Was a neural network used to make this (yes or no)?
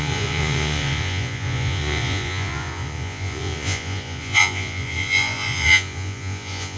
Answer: yes